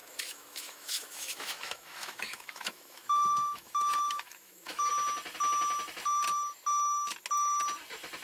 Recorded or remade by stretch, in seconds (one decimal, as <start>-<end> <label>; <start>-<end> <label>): 0.0-4.9 remade; 4.9-8.2 recorded